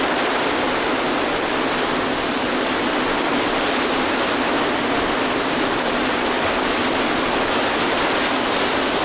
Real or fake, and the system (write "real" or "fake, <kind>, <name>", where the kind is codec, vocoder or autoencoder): real